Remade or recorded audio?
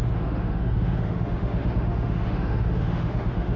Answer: remade